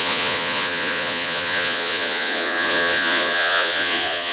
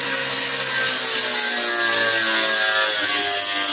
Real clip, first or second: second